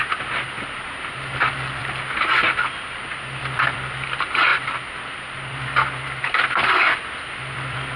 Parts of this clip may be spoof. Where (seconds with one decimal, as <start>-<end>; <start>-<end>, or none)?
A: none